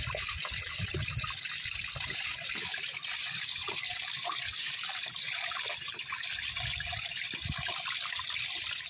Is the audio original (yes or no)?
yes